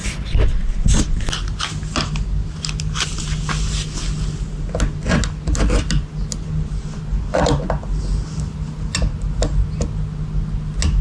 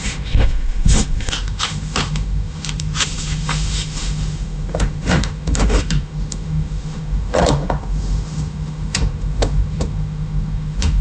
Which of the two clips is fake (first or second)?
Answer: second